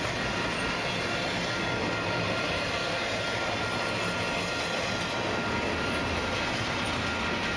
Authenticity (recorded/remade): recorded